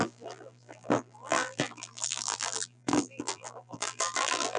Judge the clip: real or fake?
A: fake